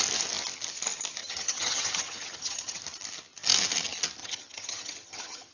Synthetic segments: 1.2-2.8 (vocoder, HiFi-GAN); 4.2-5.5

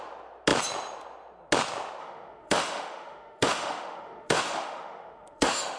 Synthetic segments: 2.0-5.8 (autoencoder, DAC-VAE)